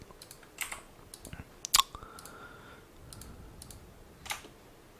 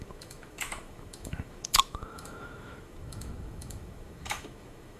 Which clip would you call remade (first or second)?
second